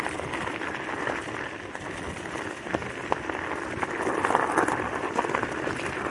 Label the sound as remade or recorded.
recorded